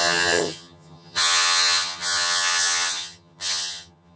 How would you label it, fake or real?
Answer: fake